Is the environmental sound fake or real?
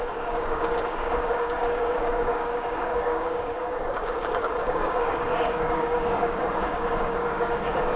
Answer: fake